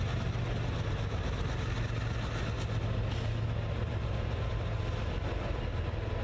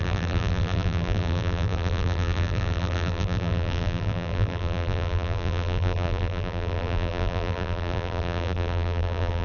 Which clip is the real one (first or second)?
first